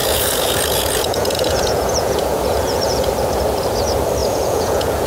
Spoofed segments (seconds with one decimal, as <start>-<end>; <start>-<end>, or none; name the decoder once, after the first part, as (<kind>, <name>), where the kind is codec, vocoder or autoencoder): 0.0-3.1 (vocoder, Vocos); 4.2-5.1